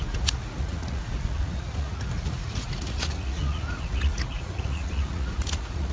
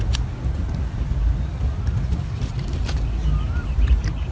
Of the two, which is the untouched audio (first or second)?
second